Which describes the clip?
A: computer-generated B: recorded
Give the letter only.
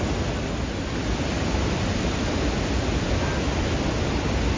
B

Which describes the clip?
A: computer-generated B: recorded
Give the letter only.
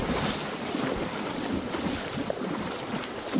B